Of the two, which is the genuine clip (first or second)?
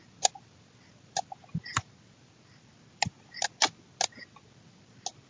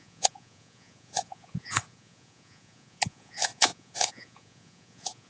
first